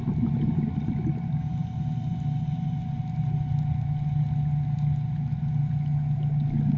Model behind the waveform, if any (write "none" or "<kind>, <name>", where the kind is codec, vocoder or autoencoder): none